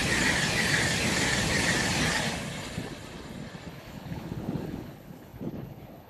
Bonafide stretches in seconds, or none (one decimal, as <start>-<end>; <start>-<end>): 0.0-3.7